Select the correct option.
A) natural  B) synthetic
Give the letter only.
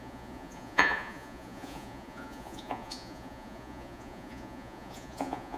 B